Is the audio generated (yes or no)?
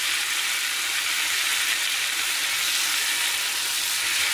no